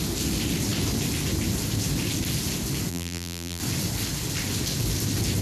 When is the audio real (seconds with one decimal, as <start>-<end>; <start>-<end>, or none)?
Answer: 0.0-2.9; 3.6-5.4